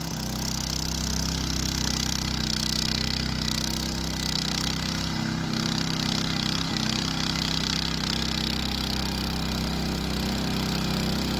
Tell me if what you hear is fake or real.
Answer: real